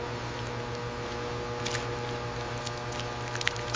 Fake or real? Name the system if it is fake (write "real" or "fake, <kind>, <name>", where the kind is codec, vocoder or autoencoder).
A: real